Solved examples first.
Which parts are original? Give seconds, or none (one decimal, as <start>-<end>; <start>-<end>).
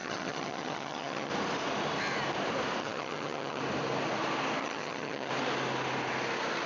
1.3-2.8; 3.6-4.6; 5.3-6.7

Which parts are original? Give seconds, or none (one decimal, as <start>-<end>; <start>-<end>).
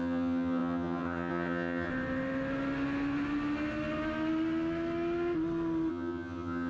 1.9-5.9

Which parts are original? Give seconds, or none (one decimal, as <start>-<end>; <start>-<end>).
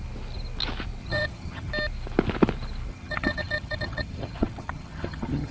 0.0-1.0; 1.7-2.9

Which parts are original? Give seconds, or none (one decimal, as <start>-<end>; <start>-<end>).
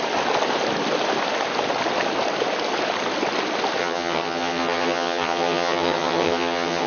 0.0-3.8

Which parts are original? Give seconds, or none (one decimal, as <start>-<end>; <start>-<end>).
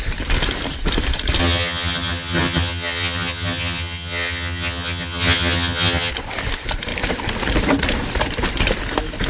0.0-1.4; 6.1-9.3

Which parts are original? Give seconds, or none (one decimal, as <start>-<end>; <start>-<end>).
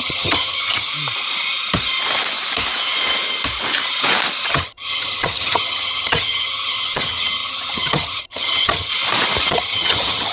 0.9-4.5; 8.9-9.5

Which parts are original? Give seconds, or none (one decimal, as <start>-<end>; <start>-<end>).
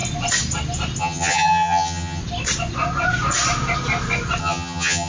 0.0-1.0; 2.2-4.4